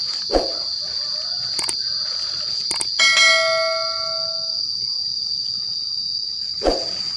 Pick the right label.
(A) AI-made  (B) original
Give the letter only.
B